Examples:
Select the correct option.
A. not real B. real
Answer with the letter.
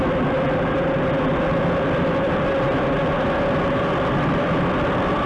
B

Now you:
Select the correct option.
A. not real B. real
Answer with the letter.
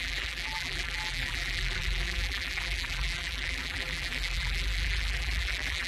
A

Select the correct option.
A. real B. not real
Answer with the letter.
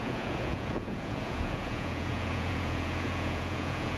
B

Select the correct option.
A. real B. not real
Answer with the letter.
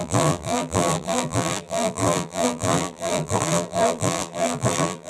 B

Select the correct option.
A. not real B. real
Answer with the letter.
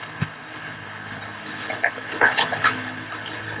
A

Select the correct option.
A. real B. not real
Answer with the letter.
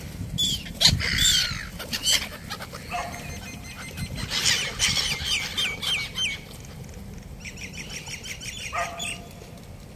A